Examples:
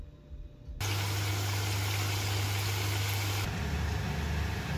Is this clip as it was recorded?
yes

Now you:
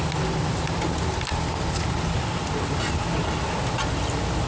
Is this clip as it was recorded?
yes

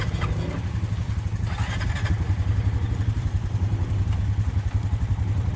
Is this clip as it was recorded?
yes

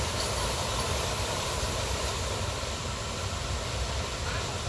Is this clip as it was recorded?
no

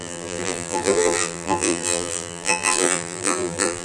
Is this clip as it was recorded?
no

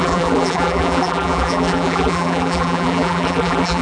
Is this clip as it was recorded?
no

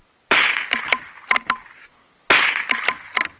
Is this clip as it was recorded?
yes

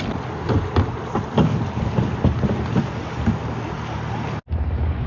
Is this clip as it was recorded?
yes